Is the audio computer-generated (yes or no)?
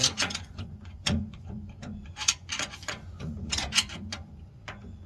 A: yes